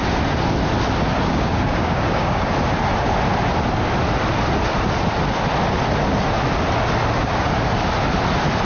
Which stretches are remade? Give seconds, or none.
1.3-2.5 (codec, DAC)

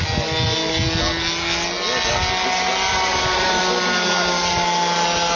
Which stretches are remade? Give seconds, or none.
2.9-3.6 (vocoder, BigVGAN v2)

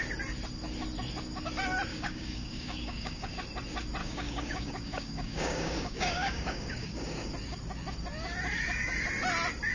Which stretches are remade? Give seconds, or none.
1.9-3.3 (codec, DAC); 4.0-7.3

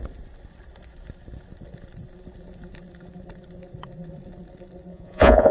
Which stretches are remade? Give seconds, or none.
4.9-5.5 (vocoder, Vocos)

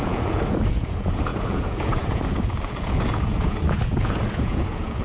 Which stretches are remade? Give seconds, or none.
0.0-5.0 (vocoder, Vocos)

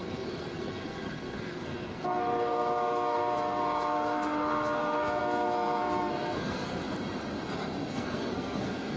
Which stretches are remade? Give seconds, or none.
0.0-6.8 (codec, SNAC); 7.9-9.0

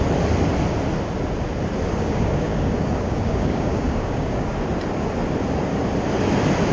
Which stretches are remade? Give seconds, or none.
1.9-4.5 (codec, DAC)